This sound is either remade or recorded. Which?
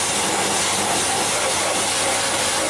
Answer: recorded